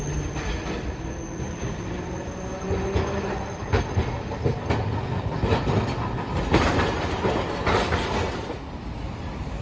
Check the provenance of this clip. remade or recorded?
recorded